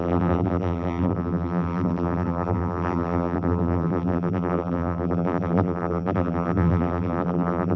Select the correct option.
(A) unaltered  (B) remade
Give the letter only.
B